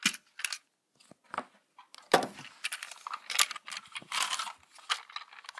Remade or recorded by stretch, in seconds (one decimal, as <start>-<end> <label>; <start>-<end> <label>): 0.0-5.6 recorded